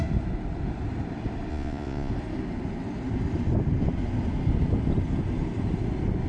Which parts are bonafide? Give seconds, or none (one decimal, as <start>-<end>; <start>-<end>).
0.0-1.5; 2.1-6.3